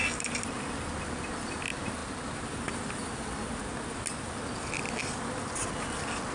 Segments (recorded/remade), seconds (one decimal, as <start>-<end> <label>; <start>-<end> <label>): 0.0-6.3 recorded